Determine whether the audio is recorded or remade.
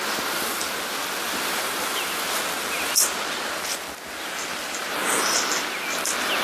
recorded